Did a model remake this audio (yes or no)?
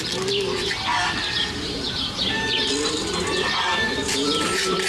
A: no